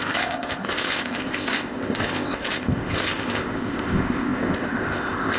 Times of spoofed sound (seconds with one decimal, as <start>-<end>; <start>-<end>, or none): 0.0-5.4